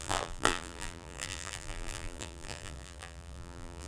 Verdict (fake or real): fake